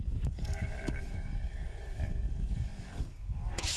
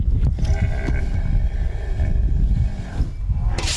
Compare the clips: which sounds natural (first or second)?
second